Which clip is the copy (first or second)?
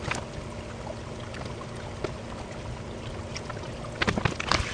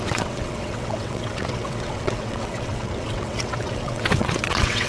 second